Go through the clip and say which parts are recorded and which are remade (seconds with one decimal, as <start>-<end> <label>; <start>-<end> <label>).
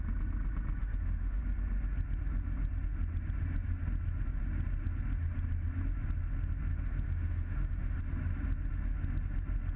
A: 0.0-0.8 recorded; 0.8-1.4 remade; 1.4-6.7 recorded; 6.7-8.0 remade; 8.0-9.8 recorded